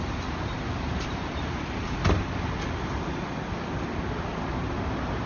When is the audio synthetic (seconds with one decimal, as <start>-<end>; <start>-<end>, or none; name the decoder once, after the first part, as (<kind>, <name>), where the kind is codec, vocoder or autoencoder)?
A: 0.5-2.0 (vocoder, BigVGAN v2)